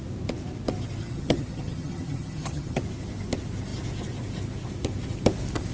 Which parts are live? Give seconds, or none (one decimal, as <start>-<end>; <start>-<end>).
0.0-1.0; 2.8-5.7